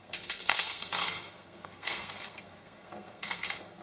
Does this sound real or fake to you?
fake